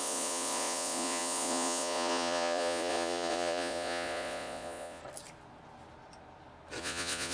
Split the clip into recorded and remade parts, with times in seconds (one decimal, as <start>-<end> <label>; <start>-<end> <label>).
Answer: 0.0-5.0 remade; 5.0-6.8 recorded; 6.8-7.3 remade